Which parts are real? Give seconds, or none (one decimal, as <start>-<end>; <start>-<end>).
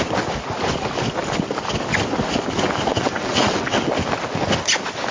0.0-2.9; 3.9-5.1